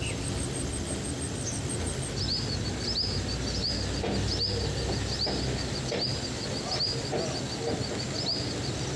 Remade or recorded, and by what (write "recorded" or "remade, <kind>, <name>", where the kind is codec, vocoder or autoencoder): recorded